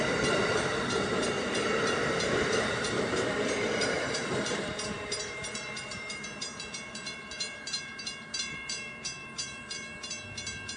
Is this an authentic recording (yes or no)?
no